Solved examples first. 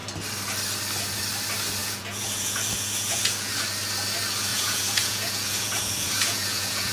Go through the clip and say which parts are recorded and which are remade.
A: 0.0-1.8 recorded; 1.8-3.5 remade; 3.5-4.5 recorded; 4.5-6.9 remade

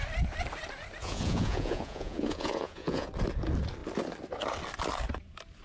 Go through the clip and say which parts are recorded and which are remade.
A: 0.0-1.0 recorded; 1.0-3.1 remade; 3.1-5.6 recorded

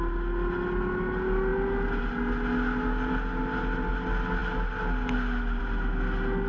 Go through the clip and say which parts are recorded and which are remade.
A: 0.0-6.5 recorded

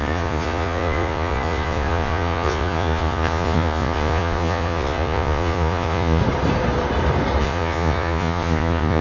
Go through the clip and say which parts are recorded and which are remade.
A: 0.0-6.2 remade; 6.2-7.4 recorded; 7.4-9.0 remade

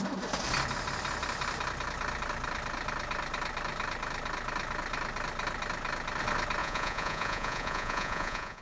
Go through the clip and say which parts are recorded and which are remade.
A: 0.0-6.6 recorded; 6.6-8.6 remade

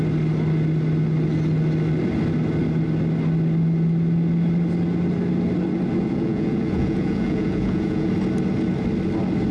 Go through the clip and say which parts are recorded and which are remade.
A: 0.0-6.0 recorded; 6.0-8.1 remade; 8.1-9.5 recorded

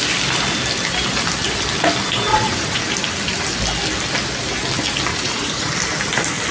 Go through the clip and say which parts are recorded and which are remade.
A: 0.0-2.3 recorded; 2.3-2.8 remade; 2.8-5.1 recorded; 5.1-5.7 remade; 5.7-6.5 recorded

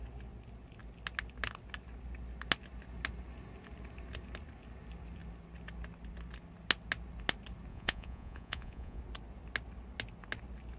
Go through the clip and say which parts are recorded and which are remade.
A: 0.0-7.7 recorded; 7.7-9.0 remade; 9.0-10.8 recorded